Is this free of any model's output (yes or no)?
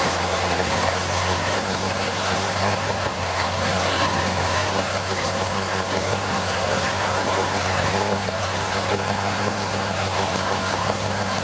no